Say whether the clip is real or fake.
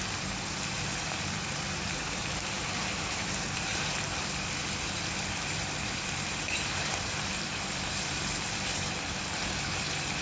fake